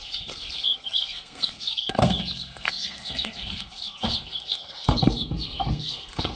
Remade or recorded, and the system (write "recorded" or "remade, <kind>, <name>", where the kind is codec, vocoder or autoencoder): remade, codec, SNAC